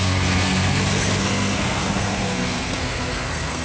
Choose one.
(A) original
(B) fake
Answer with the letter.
B